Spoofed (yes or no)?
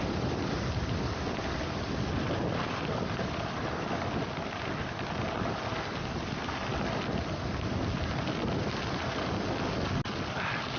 no